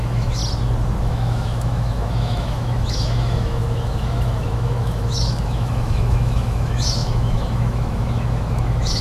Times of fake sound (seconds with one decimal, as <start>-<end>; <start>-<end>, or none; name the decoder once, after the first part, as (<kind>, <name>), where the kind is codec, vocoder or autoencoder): 0.0-0.4 (autoencoder, DAC-VAE); 1.0-9.0